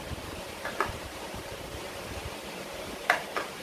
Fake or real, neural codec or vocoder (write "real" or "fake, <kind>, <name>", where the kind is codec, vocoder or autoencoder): fake, vocoder, BigVGAN v2